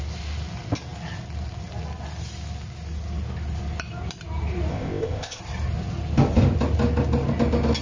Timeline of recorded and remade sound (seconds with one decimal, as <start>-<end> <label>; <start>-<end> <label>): 0.0-4.7 recorded; 4.7-5.4 remade; 5.4-7.8 recorded